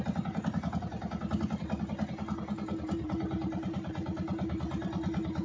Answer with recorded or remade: recorded